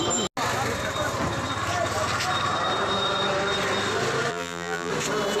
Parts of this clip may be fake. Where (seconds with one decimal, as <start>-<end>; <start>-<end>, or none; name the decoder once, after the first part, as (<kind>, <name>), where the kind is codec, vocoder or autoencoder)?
4.3-4.9 (vocoder, BigVGAN v2)